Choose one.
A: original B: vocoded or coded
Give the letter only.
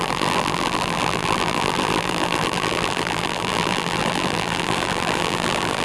B